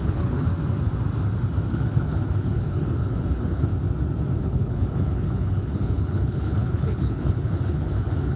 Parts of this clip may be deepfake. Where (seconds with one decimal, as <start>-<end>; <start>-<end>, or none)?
0.0-0.5; 1.7-3.7; 4.4-8.4